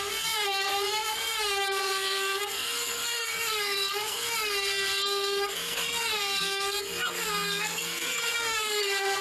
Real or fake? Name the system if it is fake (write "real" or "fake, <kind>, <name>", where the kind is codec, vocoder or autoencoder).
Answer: fake, codec, SNAC